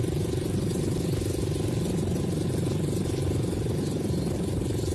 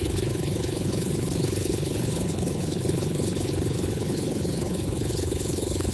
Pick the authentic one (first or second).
first